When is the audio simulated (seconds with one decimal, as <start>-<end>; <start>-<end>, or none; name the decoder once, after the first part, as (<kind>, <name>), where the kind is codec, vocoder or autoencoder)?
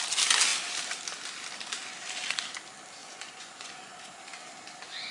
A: 3.0-3.9 (vocoder, Vocos)